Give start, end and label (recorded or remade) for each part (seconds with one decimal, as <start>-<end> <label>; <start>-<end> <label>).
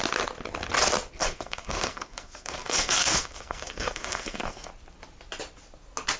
0.0-1.2 recorded; 1.2-4.7 remade; 4.7-6.2 recorded